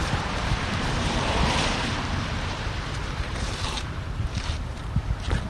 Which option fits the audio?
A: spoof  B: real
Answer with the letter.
A